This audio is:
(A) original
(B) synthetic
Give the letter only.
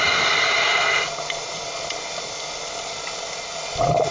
A